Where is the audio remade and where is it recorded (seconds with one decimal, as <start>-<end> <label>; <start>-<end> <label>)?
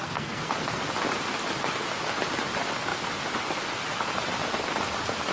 0.0-0.8 remade; 0.8-5.3 recorded